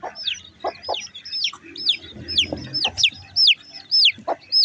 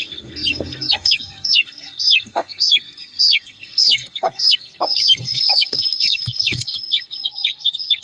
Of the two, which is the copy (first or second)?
second